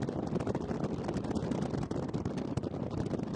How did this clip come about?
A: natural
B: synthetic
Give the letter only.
A